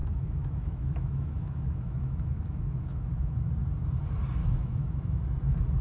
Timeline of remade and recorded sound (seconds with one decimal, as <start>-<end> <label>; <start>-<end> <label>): 0.0-3.5 remade; 3.5-4.4 recorded; 4.4-5.2 remade; 5.2-5.8 recorded